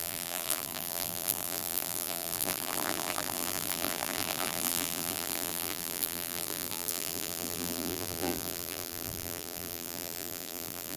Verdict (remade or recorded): remade